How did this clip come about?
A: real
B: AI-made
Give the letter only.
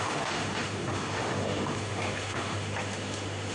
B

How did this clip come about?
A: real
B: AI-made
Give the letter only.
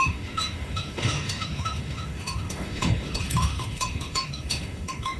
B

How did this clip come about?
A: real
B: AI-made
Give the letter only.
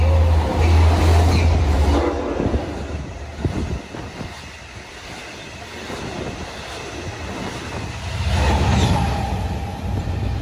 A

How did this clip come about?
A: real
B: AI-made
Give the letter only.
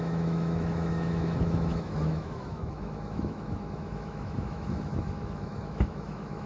B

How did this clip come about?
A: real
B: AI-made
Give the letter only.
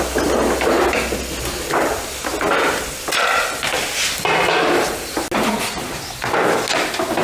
A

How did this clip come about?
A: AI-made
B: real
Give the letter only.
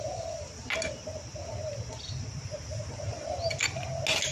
B